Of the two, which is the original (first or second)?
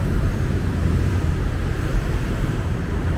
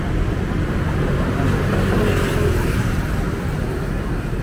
second